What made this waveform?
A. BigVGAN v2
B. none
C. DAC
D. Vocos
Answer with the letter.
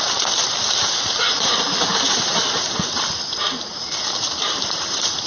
B